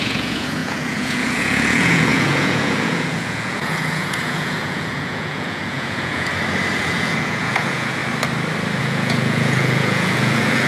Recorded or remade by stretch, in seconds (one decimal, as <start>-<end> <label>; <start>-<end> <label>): 0.0-6.3 remade; 6.3-6.8 recorded; 6.8-8.0 remade; 8.0-8.8 recorded; 8.8-10.7 remade